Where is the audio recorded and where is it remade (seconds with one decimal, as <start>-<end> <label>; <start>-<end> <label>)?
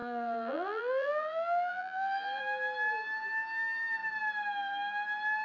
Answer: 0.0-2.4 remade; 2.4-5.4 recorded